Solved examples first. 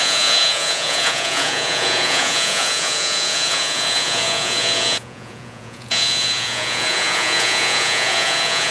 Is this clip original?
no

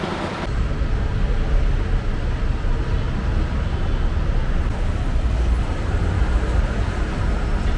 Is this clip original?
yes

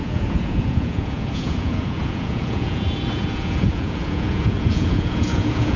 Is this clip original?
no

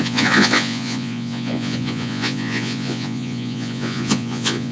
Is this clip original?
no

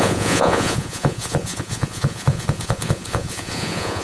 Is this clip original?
no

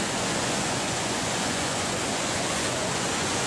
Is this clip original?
no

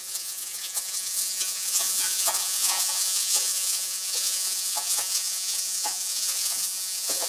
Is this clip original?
no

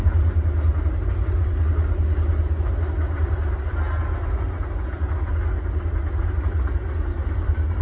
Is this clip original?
yes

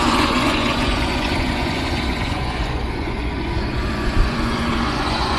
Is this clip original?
no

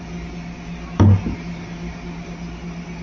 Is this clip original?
yes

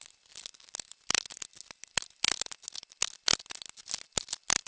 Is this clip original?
yes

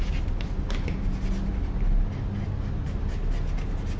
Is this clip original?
yes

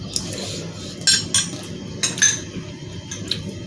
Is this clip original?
yes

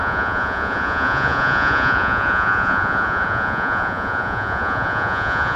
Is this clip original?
no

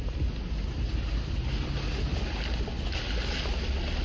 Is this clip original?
yes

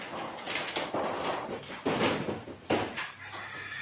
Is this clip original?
yes